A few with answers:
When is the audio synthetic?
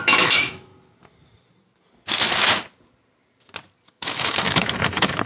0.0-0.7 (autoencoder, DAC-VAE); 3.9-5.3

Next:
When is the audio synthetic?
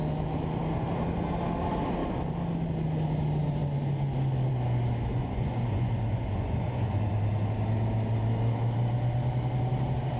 5.1-7.1 (vocoder, Vocos)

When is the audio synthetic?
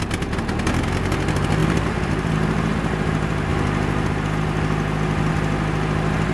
1.6-2.3 (vocoder, BigVGAN v2)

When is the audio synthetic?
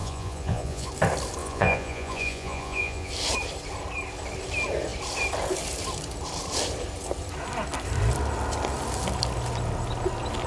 0.0-0.9 (vocoder, Vocos); 1.4-3.1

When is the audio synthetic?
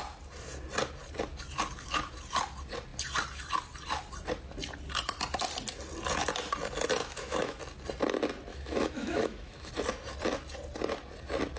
7.0-7.6 (autoencoder, DAC-VAE); 8.5-9.7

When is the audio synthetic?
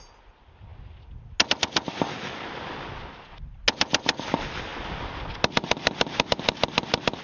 none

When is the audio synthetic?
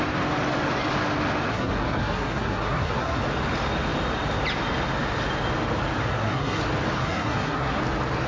1.5-3.2 (codec, SNAC); 6.0-6.6; 7.0-7.8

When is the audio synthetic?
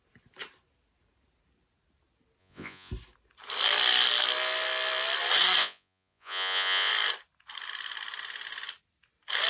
2.4-2.9 (vocoder, Vocos); 5.6-6.9